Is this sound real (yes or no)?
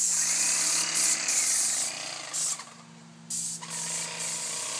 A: yes